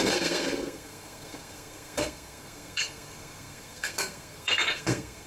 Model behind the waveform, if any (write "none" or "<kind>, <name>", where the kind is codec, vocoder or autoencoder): codec, SNAC